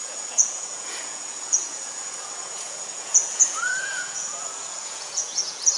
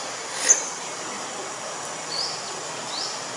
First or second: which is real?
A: second